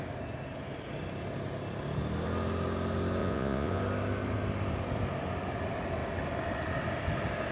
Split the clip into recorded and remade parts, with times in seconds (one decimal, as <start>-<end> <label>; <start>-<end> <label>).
0.0-3.2 recorded; 3.2-3.8 remade; 3.8-7.5 recorded

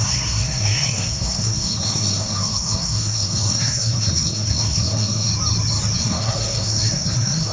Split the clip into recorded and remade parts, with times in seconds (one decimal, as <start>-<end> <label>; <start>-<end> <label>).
0.0-5.3 remade; 5.3-6.0 recorded; 6.0-7.5 remade

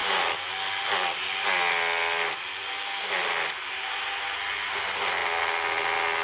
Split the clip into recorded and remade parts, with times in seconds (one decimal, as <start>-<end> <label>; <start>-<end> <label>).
0.0-3.6 recorded; 3.6-4.2 remade; 4.2-6.2 recorded

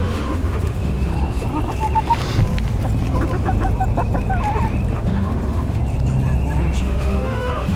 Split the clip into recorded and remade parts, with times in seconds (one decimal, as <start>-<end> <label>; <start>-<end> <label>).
0.0-1.1 remade; 1.1-4.9 recorded; 4.9-5.8 remade; 5.8-6.8 recorded; 6.8-7.8 remade